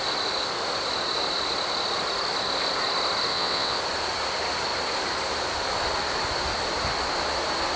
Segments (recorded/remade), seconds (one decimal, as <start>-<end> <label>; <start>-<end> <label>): 0.0-3.3 recorded; 3.3-3.8 remade; 3.8-7.8 recorded